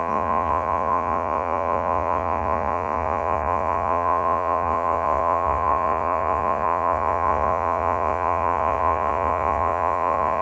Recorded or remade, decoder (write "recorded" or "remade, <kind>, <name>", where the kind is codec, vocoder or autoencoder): remade, vocoder, Vocos